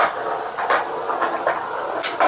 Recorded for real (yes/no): yes